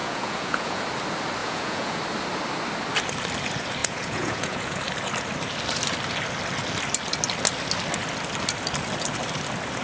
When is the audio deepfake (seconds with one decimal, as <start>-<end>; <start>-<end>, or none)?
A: 0.0-0.8; 1.4-2.0; 3.8-4.8